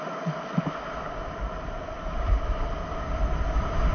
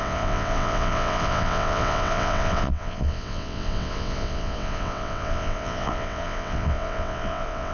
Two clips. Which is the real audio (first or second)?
first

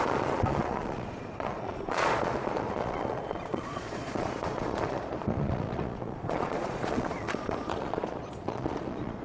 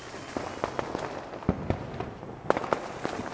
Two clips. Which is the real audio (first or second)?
second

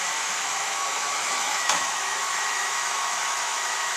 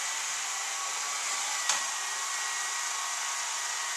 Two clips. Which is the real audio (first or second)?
second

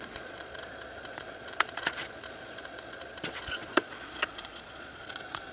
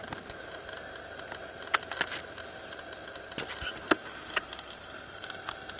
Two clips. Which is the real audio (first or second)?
second